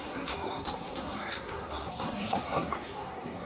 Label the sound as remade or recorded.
remade